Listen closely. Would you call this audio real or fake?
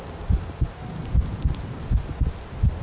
real